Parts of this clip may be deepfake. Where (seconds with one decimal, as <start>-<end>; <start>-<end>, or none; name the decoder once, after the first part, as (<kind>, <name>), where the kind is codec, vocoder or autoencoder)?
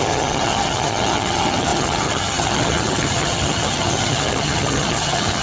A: 0.0-5.4 (vocoder, HiFi-GAN)